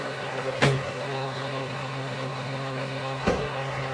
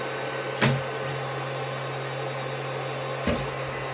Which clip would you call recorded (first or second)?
second